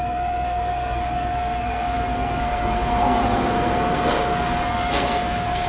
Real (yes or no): no